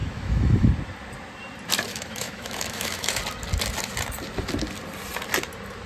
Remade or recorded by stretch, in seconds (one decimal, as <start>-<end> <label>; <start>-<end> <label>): 0.0-0.7 remade; 0.7-1.9 recorded; 1.9-3.2 remade; 3.2-5.9 recorded